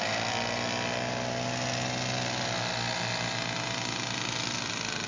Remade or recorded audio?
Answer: recorded